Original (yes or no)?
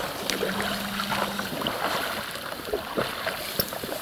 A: yes